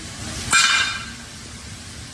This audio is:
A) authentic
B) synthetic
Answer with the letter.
A